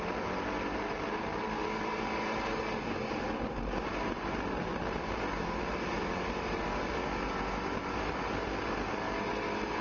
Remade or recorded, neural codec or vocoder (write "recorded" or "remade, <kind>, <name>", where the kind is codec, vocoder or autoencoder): recorded